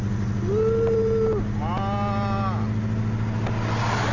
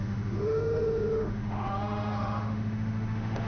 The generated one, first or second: second